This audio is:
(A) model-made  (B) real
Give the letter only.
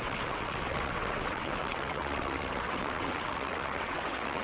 A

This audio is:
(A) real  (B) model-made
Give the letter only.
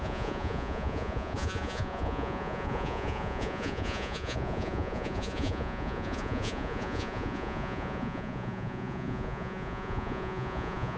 B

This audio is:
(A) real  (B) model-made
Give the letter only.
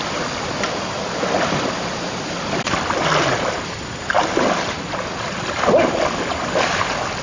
A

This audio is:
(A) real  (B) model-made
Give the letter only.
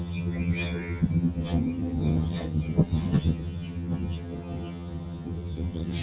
B